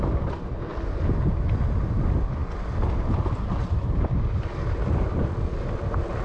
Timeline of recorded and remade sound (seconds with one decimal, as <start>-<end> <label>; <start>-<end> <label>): 0.0-6.2 recorded